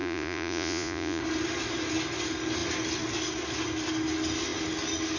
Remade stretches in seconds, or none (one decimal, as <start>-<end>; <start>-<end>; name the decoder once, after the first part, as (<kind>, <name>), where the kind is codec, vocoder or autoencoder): 0.0-1.2 (vocoder, Vocos)